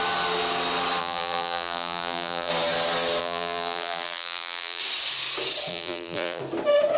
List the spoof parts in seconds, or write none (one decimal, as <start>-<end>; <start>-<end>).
1.0-2.5; 3.2-4.8; 5.7-6.4